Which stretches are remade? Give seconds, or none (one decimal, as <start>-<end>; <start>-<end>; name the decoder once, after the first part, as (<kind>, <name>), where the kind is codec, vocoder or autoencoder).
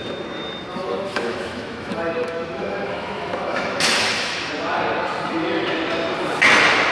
0.7-4.5 (autoencoder, DAC-VAE)